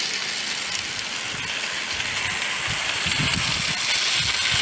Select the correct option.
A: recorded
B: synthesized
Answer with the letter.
A